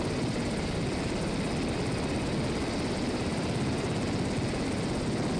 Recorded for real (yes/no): yes